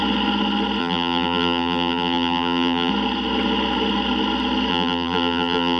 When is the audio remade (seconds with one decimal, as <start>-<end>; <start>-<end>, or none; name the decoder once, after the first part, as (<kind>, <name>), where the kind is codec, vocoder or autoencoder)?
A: 0.8-2.9 (vocoder, BigVGAN v2); 4.7-5.8